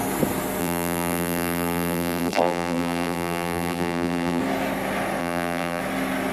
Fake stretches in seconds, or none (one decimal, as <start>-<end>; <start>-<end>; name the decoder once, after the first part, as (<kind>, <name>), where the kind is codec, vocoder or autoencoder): 0.6-4.4 (vocoder, BigVGAN v2); 5.2-5.8